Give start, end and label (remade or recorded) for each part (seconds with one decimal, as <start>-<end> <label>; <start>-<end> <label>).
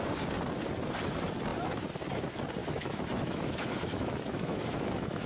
0.0-2.6 recorded; 2.6-5.3 remade